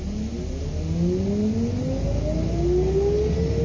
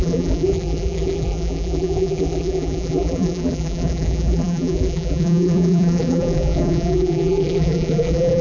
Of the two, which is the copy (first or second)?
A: second